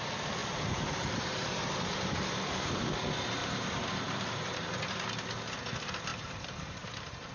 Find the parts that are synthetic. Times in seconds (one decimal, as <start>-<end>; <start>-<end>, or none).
0.4-2.9; 3.4-4.8; 6.1-7.3